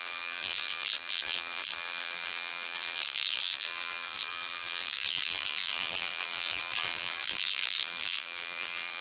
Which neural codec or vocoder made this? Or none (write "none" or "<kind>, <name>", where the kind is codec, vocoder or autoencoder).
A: vocoder, BigVGAN v2